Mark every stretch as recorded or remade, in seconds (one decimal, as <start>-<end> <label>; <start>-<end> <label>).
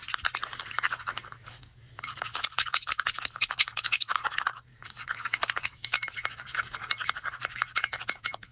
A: 0.0-0.6 recorded; 0.6-8.5 remade